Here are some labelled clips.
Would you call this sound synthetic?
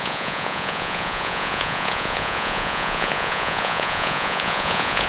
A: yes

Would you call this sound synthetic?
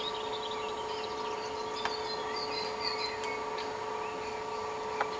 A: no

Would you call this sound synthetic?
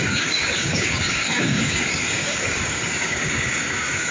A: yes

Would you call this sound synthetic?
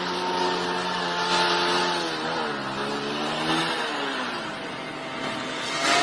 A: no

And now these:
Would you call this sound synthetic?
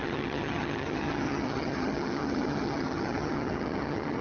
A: yes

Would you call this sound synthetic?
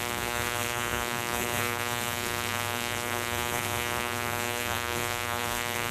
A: yes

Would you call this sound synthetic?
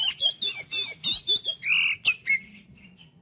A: no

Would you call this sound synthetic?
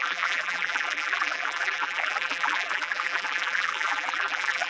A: yes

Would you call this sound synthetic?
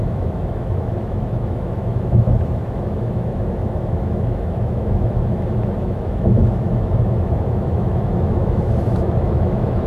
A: yes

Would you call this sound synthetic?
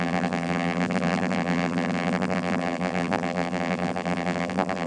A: yes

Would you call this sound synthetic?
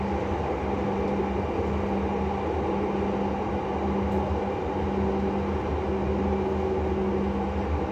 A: no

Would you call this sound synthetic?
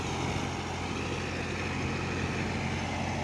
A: no